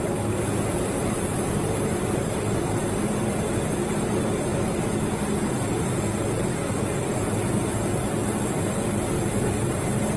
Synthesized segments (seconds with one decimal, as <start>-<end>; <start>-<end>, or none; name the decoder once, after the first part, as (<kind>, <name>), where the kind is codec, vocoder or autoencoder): none